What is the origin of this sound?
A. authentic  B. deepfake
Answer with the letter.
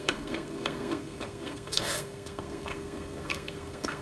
B